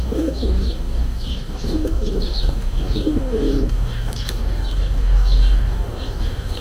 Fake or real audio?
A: fake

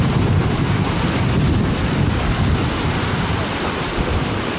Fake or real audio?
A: real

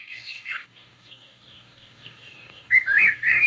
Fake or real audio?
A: fake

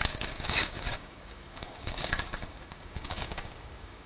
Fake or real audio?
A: fake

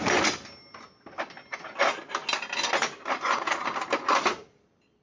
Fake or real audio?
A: real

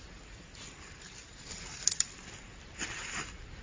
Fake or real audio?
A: real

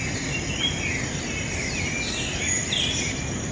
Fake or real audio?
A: real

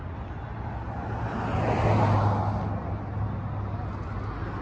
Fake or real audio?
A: real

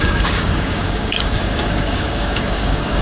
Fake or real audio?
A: fake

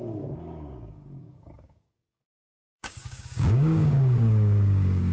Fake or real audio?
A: fake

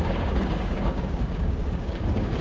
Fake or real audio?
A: fake